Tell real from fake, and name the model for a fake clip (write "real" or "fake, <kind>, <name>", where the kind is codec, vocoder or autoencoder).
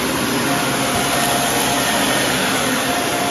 real